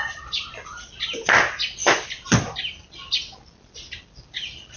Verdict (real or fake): real